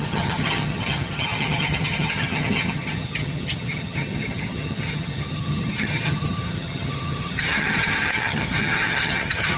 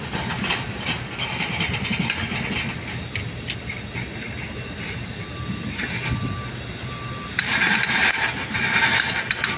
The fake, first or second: first